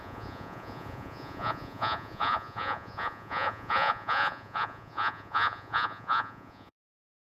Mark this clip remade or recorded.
remade